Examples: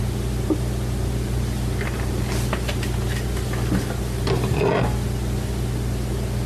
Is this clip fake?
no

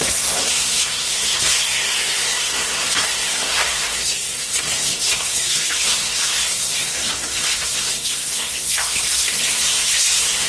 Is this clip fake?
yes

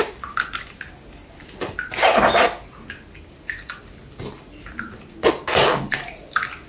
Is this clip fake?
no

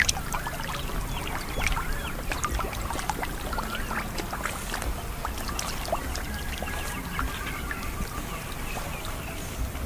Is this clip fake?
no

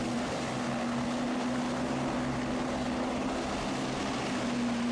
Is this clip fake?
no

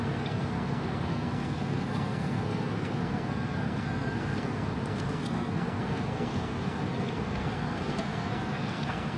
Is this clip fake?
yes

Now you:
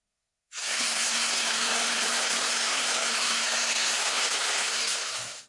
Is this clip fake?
yes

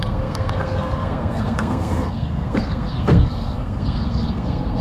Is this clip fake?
yes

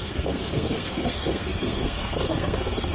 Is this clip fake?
yes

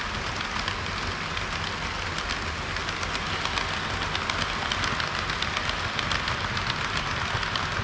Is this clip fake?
no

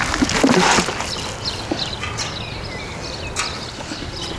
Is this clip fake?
no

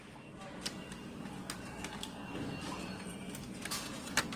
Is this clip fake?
no